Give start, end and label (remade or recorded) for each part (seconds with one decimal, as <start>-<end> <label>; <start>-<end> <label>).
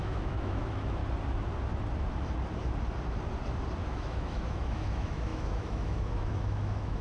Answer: 0.0-1.0 remade; 1.0-3.8 recorded; 3.8-7.0 remade